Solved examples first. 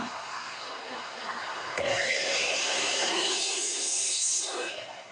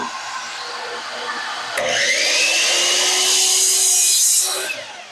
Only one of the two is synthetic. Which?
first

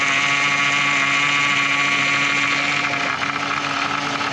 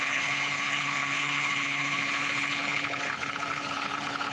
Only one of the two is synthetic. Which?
second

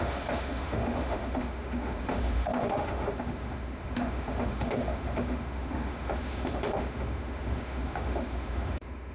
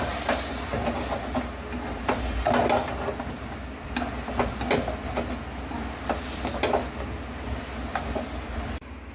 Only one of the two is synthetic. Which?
first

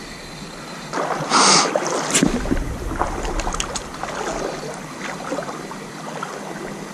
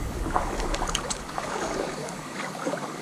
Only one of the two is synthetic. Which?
second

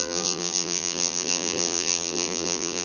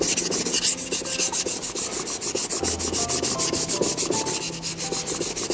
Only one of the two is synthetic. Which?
first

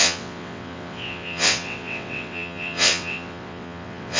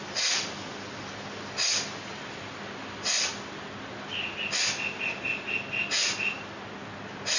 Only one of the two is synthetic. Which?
first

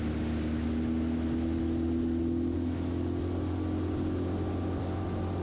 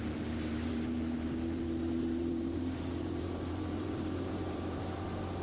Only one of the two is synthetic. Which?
second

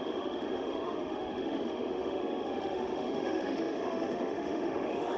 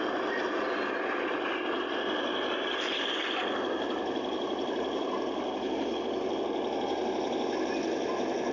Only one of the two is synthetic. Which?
first